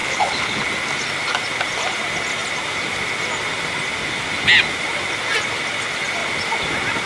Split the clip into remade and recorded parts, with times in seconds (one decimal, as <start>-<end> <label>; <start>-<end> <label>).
0.0-0.6 remade; 0.6-7.1 recorded